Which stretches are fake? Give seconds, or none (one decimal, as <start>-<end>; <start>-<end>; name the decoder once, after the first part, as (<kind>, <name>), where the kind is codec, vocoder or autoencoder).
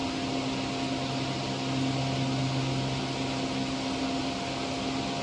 none